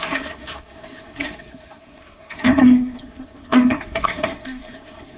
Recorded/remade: remade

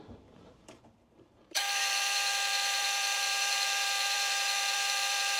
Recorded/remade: remade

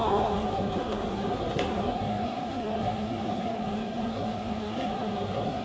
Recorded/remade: remade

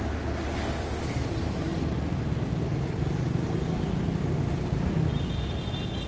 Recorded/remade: recorded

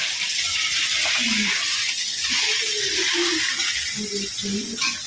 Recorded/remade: recorded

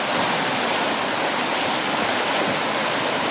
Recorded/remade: recorded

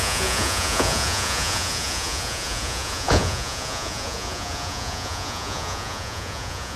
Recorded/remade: remade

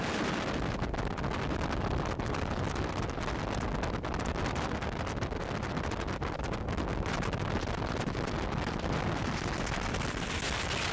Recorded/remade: recorded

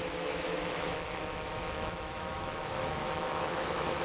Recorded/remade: remade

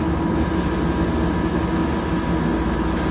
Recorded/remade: recorded